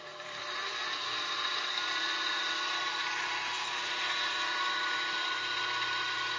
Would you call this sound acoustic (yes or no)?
no